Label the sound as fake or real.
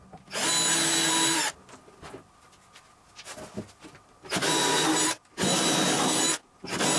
real